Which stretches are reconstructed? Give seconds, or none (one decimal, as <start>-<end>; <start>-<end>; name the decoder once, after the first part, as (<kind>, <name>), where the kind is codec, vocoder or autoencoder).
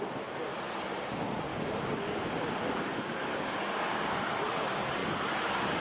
1.5-2.5 (codec, DAC); 3.3-4.2